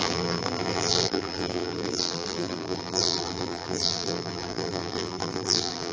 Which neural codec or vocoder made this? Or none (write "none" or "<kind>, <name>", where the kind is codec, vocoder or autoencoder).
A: vocoder, BigVGAN v2